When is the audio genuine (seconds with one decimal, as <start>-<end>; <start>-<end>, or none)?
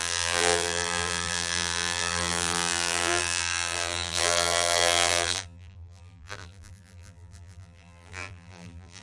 none